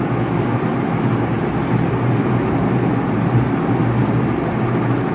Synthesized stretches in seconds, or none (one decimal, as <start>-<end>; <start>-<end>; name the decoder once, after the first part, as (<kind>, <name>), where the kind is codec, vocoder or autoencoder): none